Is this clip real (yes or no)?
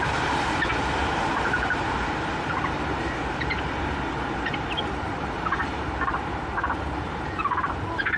no